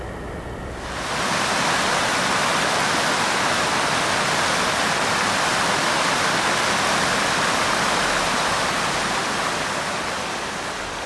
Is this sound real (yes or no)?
yes